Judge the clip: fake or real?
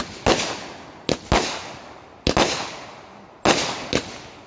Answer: real